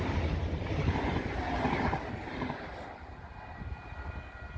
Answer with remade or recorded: recorded